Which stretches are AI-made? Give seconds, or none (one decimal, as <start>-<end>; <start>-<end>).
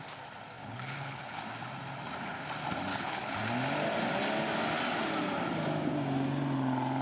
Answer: 0.6-1.4; 2.9-3.4